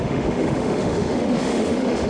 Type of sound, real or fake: fake